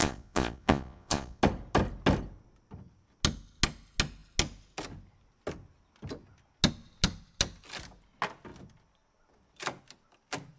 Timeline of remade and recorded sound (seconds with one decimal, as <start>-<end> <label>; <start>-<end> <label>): 0.0-1.4 remade; 1.4-10.6 recorded